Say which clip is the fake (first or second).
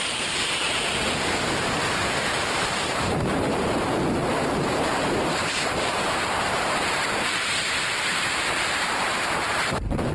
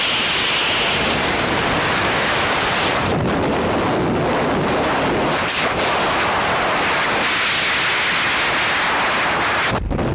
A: first